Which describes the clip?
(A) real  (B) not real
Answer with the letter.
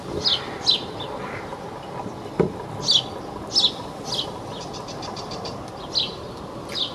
A